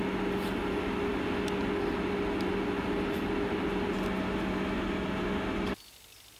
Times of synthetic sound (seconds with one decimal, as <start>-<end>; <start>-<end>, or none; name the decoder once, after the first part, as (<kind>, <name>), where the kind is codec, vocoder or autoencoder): none